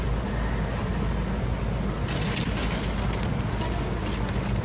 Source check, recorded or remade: recorded